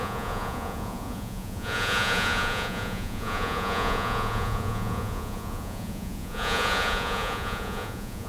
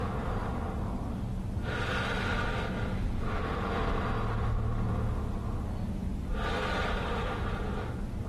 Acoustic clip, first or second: second